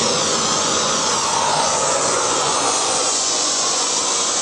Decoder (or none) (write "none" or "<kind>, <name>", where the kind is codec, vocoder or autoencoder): vocoder, Vocos